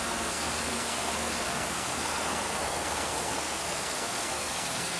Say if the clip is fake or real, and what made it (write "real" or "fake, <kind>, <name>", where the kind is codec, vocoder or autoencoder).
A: fake, codec, SNAC